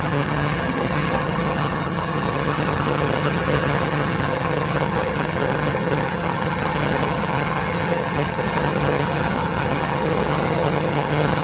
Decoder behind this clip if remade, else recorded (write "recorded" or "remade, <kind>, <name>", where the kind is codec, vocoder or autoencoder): remade, vocoder, HiFi-GAN